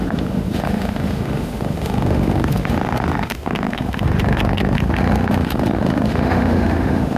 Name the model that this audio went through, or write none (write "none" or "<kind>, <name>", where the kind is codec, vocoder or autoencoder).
autoencoder, DAC-VAE